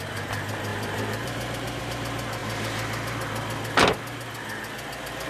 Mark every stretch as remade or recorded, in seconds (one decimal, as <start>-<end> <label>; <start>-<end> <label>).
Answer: 0.0-0.7 recorded; 0.7-1.8 remade; 1.8-5.3 recorded